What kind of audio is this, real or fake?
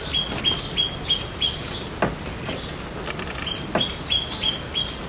real